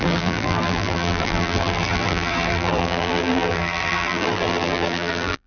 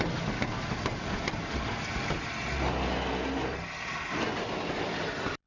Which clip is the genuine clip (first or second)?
second